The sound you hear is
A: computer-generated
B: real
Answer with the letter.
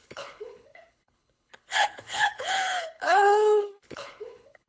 A